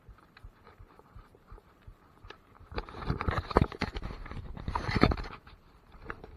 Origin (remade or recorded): remade